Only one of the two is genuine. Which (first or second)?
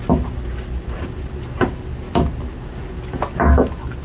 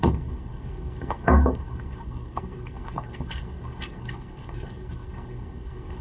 first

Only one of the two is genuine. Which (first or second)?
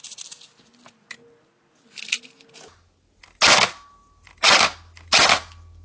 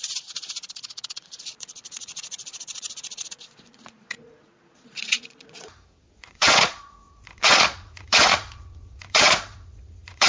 first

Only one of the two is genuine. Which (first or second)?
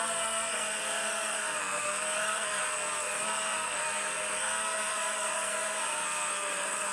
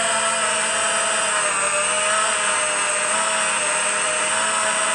second